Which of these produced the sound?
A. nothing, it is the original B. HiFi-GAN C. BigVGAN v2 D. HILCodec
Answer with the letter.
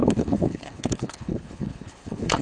D